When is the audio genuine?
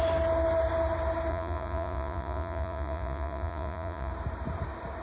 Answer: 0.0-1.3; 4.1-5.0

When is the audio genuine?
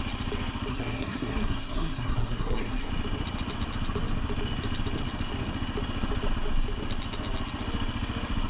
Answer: 0.0-0.7; 2.9-8.5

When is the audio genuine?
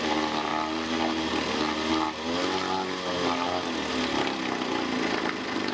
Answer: 0.0-5.7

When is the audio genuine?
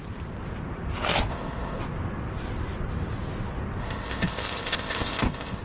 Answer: 0.0-1.3; 1.8-3.8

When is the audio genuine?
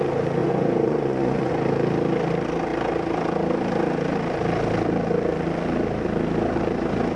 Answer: 0.0-0.4; 1.5-7.2